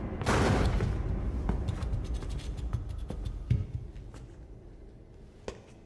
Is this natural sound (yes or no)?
yes